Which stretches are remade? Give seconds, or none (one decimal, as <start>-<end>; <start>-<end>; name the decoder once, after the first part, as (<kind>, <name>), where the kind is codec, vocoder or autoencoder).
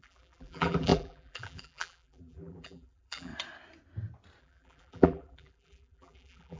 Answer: 0.0-3.3 (vocoder, BigVGAN v2); 4.4-6.6